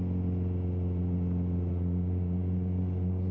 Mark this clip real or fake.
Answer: real